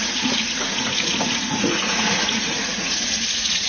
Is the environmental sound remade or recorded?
remade